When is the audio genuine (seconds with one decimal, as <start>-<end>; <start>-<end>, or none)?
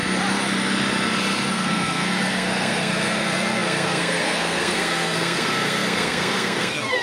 0.0-1.5